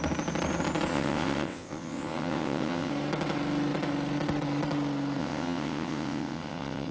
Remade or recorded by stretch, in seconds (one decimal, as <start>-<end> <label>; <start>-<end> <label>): 0.0-0.9 recorded; 0.9-2.9 remade; 2.9-5.2 recorded; 5.2-6.9 remade